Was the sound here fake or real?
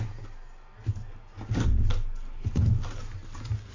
real